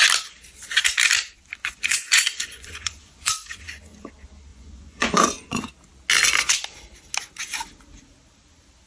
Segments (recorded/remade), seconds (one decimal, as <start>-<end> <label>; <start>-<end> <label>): 0.0-1.6 recorded; 1.6-4.1 remade; 4.1-4.5 recorded; 4.5-5.7 remade; 5.7-8.9 recorded

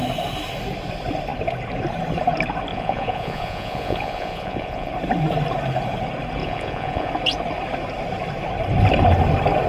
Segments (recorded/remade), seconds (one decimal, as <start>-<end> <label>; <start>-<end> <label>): 0.0-2.7 recorded; 2.7-4.9 remade; 4.9-6.4 recorded; 6.4-7.1 remade; 7.1-9.7 recorded

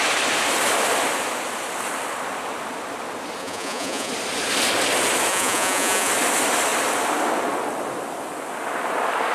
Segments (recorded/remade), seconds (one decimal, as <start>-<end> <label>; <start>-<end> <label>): 0.0-3.4 recorded; 3.4-4.1 remade; 4.1-5.3 recorded; 5.3-6.1 remade; 6.1-9.3 recorded

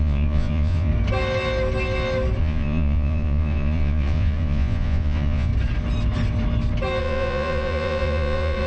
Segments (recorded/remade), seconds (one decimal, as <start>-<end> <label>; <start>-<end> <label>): 0.0-0.9 remade; 0.9-2.4 recorded; 2.4-5.5 remade; 5.5-7.0 recorded; 7.0-8.7 remade

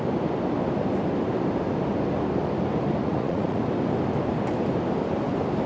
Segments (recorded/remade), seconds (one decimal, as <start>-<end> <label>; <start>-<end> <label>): 0.0-3.0 recorded; 3.0-3.6 remade; 3.6-5.7 recorded

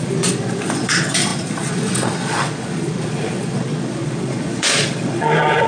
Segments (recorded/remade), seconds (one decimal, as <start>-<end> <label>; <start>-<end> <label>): 0.0-5.7 remade

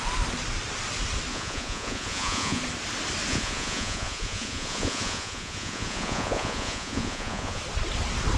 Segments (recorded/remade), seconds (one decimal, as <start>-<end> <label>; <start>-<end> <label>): 0.0-1.3 recorded; 1.3-2.6 remade; 2.6-3.3 recorded; 3.3-7.6 remade; 7.6-8.4 recorded

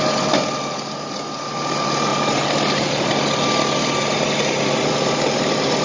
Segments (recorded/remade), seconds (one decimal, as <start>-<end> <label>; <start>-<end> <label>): 0.0-5.8 recorded